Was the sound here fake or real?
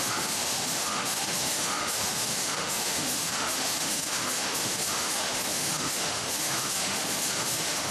fake